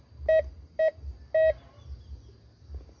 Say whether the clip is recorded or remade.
recorded